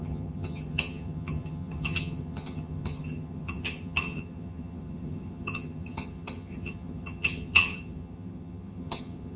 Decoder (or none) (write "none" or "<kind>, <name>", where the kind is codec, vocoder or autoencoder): vocoder, HiFi-GAN